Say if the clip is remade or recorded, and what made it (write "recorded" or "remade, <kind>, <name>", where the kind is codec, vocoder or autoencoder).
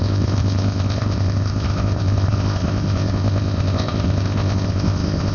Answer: remade, codec, ZipCodec